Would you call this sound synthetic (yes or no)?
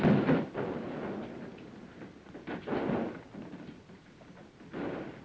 no